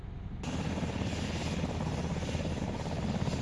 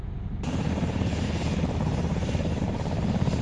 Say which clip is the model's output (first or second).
second